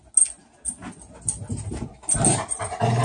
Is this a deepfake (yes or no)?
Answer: no